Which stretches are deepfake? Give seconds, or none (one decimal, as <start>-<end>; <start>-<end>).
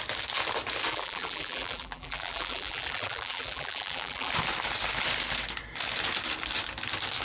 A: 0.9-4.3